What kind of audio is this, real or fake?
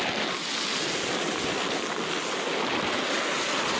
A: real